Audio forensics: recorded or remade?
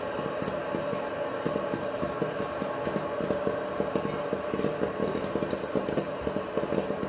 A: recorded